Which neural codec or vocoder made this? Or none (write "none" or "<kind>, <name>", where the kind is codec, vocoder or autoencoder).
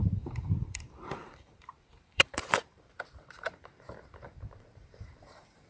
vocoder, BigVGAN v2